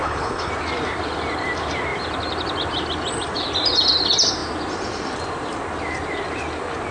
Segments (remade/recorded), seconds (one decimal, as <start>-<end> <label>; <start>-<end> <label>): 0.0-0.5 remade; 0.5-6.9 recorded